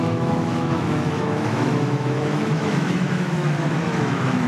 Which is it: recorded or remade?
remade